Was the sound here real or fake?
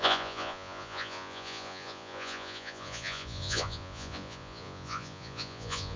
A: fake